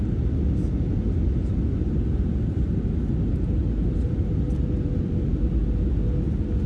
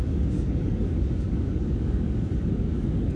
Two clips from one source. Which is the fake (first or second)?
second